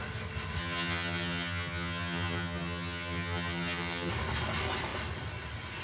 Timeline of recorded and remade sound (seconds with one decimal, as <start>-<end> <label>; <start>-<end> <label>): 0.0-0.6 recorded; 0.6-4.1 remade; 4.1-5.8 recorded